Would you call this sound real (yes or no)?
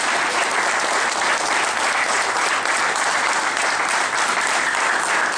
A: no